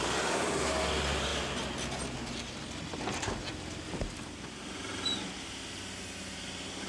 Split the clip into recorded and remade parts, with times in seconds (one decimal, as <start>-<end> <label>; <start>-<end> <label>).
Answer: 0.0-6.9 recorded